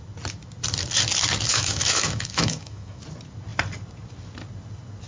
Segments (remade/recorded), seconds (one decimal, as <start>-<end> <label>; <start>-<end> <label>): 0.0-1.5 recorded; 1.5-3.0 remade; 3.0-5.1 recorded